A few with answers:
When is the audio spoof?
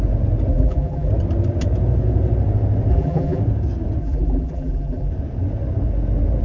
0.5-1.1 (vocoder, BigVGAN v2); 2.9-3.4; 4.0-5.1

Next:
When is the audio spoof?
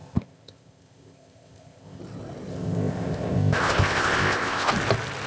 0.0-2.0 (codec, ZipCodec); 2.5-4.7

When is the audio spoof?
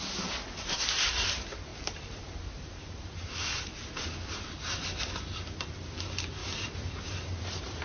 1.7-5.1 (vocoder, BigVGAN v2); 6.4-7.8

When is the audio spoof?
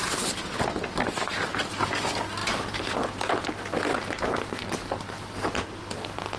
none